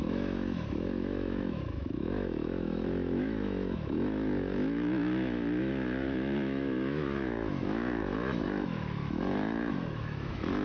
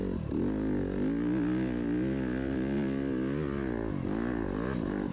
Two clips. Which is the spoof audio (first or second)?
first